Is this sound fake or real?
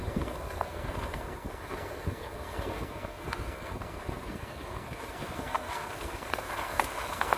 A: fake